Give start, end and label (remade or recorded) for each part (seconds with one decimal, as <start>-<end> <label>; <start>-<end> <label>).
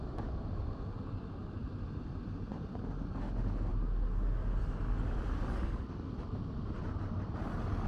0.0-7.9 recorded